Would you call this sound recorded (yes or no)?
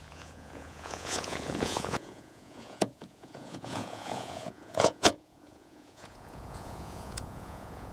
no